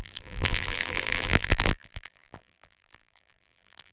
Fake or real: fake